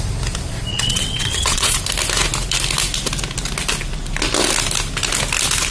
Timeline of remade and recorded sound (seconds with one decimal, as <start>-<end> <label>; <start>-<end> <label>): 0.0-0.7 recorded; 0.7-1.8 remade; 1.8-5.7 recorded